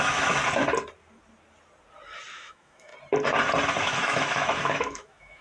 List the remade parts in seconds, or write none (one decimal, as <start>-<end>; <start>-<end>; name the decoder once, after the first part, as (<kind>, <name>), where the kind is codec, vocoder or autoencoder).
0.0-0.4 (autoencoder, DAC-VAE); 2.3-2.9; 3.8-5.4